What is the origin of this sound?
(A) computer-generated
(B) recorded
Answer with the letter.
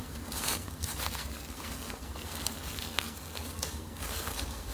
A